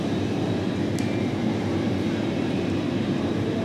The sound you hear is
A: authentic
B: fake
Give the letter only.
B